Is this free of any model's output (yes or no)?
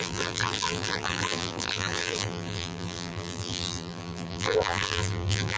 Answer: no